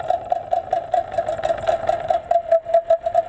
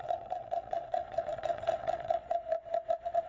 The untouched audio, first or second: first